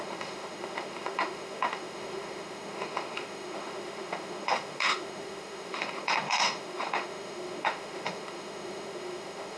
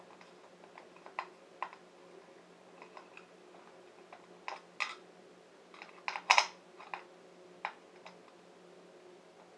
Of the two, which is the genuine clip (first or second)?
second